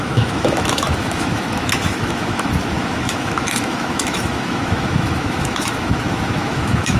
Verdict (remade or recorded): remade